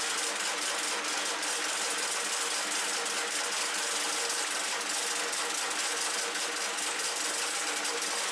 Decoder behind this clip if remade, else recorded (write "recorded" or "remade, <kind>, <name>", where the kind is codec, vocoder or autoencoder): recorded